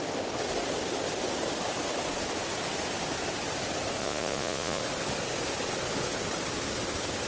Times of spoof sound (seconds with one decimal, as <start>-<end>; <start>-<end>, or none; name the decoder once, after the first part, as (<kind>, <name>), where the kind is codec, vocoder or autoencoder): 4.0-4.8 (vocoder, Vocos)